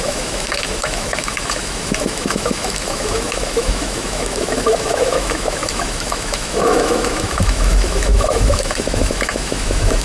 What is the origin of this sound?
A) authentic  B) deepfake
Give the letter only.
B